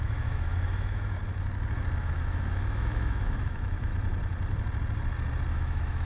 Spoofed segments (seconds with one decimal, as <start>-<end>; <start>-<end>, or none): 0.0-1.2; 2.0-3.9; 5.5-6.1

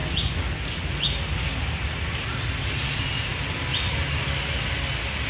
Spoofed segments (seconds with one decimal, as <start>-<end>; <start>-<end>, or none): none